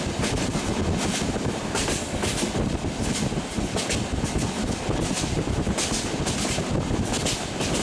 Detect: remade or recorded recorded